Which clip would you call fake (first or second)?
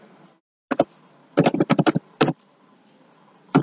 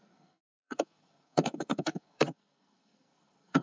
second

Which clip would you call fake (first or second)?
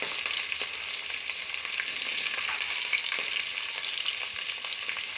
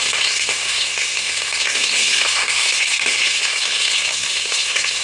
second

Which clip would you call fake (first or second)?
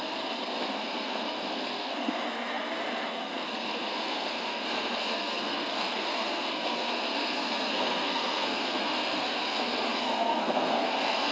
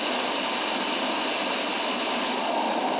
first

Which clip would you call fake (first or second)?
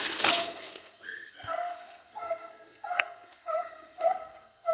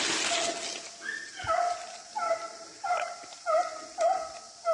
first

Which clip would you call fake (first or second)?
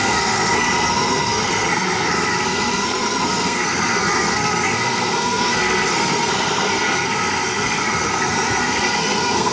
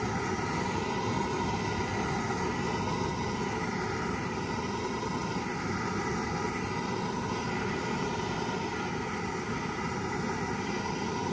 first